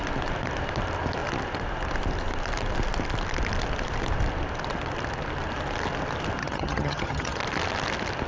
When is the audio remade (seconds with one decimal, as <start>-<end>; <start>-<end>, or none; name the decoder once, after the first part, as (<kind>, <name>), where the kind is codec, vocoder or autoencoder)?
6.4-7.4 (vocoder, HiFi-GAN)